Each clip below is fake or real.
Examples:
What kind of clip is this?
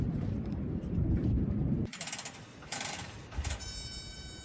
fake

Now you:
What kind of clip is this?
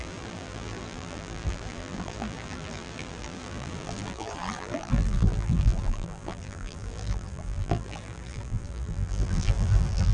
fake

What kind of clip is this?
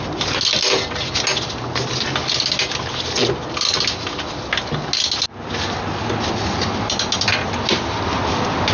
real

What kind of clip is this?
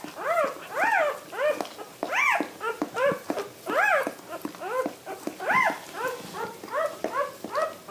real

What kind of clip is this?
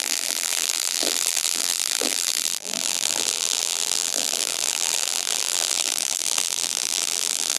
fake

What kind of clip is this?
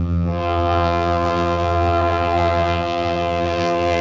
fake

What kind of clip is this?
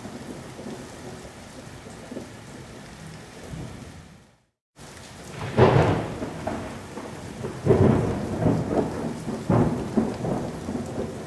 real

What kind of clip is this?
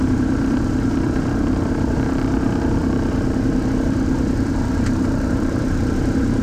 fake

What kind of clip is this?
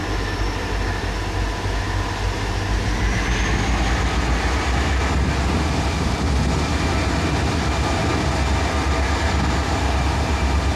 real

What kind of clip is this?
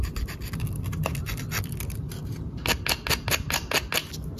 real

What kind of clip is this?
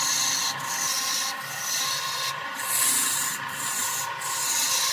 real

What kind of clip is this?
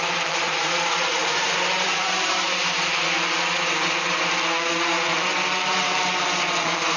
fake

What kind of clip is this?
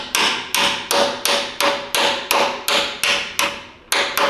real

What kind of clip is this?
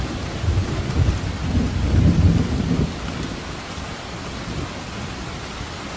real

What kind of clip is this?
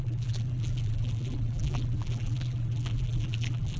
fake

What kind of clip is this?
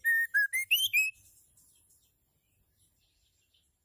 real